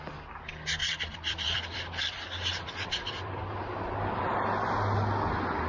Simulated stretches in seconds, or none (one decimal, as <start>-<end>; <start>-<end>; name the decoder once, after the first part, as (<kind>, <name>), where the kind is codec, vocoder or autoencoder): 0.8-4.2 (vocoder, BigVGAN v2)